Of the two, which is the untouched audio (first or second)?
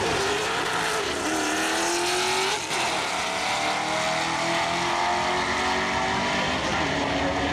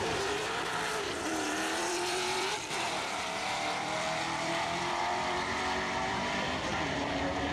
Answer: first